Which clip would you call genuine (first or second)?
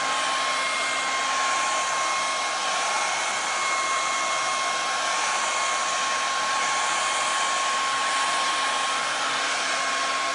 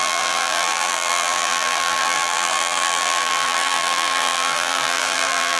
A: first